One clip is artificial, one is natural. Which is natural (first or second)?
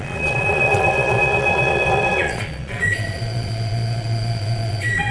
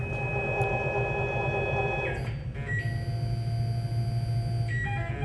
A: second